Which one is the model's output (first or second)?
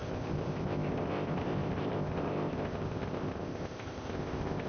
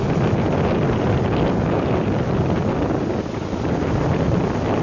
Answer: first